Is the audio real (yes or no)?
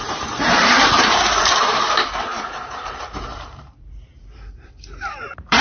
no